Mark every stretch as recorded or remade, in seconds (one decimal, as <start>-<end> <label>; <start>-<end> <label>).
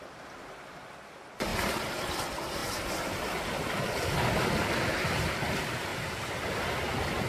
0.0-7.3 recorded